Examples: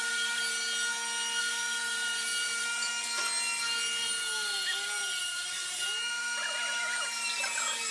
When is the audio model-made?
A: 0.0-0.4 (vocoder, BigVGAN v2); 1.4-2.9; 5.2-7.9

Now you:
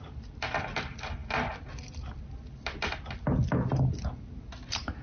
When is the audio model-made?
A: none

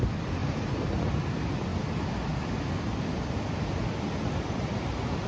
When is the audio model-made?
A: 0.4-0.9 (vocoder, BigVGAN v2)

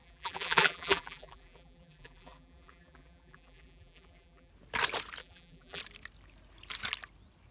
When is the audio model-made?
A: 0.0-4.5 (vocoder, BigVGAN v2); 5.2-5.8

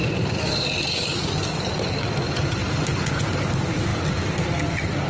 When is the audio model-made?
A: 1.5-2.6 (vocoder, BigVGAN v2); 3.5-3.9